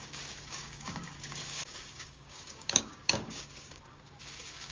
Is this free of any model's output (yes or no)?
no